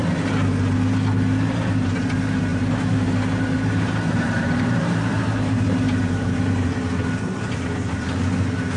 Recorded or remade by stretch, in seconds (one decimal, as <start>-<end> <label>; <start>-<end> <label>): 0.0-2.5 recorded; 2.5-6.7 remade; 6.7-8.8 recorded